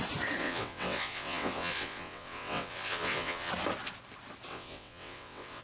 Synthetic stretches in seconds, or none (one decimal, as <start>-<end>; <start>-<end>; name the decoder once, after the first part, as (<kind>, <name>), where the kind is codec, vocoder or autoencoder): 0.4-3.5 (vocoder, WaveNeXt); 4.5-5.6